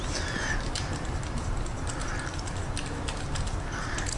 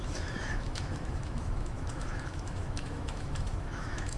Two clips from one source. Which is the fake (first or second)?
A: second